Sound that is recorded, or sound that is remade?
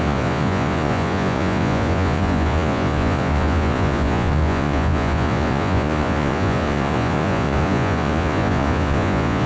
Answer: remade